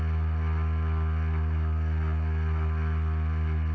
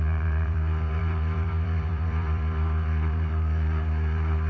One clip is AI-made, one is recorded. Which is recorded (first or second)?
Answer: first